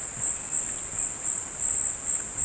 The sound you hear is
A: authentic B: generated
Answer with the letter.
A